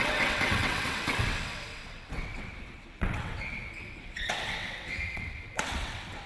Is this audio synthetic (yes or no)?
yes